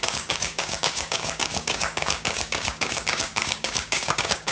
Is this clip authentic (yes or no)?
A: no